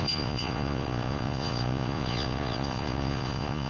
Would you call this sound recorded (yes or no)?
no